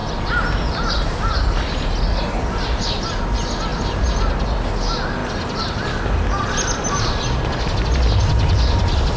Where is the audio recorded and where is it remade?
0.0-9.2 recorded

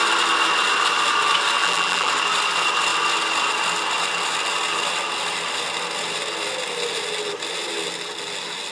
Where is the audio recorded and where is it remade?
0.0-1.6 recorded; 1.6-2.1 remade; 2.1-8.7 recorded

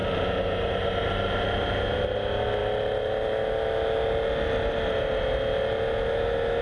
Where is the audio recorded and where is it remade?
0.0-1.7 remade; 1.7-6.6 recorded

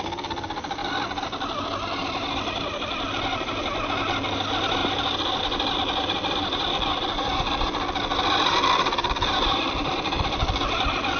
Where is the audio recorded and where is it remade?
0.0-0.8 recorded; 0.8-1.6 remade; 1.6-2.0 recorded; 2.0-3.5 remade; 3.5-4.8 recorded; 4.8-5.4 remade; 5.4-11.2 recorded

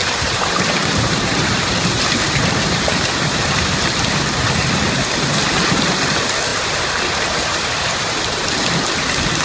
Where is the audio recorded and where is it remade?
0.0-4.2 remade; 4.2-6.5 recorded; 6.5-8.2 remade; 8.2-9.4 recorded